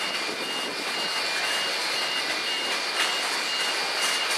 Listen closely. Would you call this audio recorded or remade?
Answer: recorded